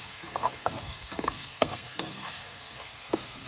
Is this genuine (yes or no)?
no